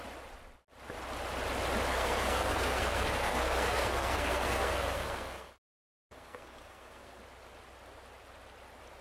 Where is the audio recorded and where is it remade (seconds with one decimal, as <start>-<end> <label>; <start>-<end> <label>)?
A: 0.0-1.9 recorded; 1.9-7.2 remade; 7.2-9.0 recorded